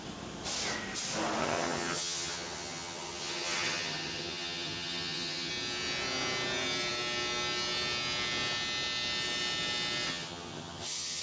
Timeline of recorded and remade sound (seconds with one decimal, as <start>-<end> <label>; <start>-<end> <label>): 0.0-1.4 recorded; 1.4-5.5 remade; 5.5-10.1 recorded; 10.1-11.2 remade

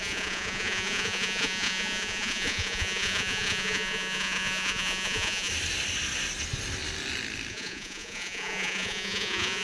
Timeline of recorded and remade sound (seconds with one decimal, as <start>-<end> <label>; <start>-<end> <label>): 0.0-5.5 remade; 5.5-7.5 recorded; 7.5-9.6 remade

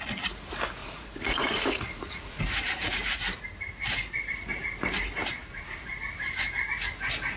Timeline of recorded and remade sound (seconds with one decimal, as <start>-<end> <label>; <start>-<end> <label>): 0.0-0.8 recorded; 0.8-2.4 remade; 2.4-5.4 recorded; 5.4-5.9 remade; 5.9-7.4 recorded

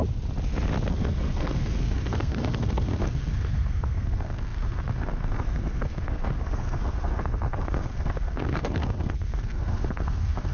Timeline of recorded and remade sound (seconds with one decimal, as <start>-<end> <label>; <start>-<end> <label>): 0.0-0.9 recorded; 0.9-10.5 remade

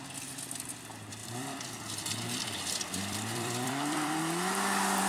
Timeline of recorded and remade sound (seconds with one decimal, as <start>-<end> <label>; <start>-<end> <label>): 0.0-1.2 recorded; 1.2-4.2 remade; 4.2-5.1 recorded

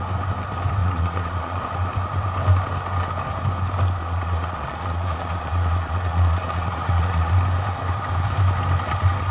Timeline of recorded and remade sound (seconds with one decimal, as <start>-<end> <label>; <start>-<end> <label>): 0.0-0.8 recorded; 0.8-1.6 remade; 1.6-4.0 recorded; 4.0-7.3 remade; 7.3-9.3 recorded

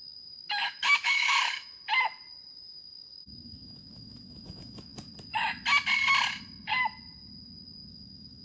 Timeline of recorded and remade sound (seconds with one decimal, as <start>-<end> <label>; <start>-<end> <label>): 0.0-1.8 remade; 1.8-2.5 recorded; 2.5-4.9 remade; 4.9-7.9 recorded; 7.9-8.4 remade

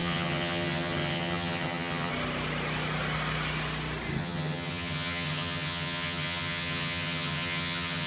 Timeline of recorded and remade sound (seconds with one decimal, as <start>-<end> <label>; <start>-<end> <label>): 0.0-2.1 remade; 2.1-4.2 recorded; 4.2-8.1 remade